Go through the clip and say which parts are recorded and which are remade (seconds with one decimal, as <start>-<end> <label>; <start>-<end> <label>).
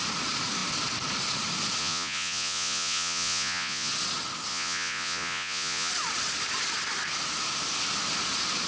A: 0.0-1.8 recorded; 1.8-3.9 remade; 3.9-4.5 recorded; 4.5-5.9 remade; 5.9-8.7 recorded